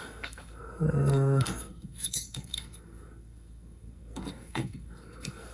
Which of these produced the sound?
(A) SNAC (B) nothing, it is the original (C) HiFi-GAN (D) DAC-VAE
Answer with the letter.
A